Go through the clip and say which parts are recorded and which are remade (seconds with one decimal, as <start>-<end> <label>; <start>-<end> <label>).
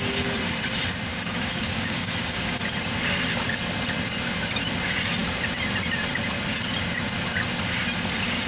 0.0-1.1 recorded; 1.1-2.6 remade; 2.6-8.5 recorded